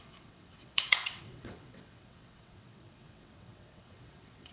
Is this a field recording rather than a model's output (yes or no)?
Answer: no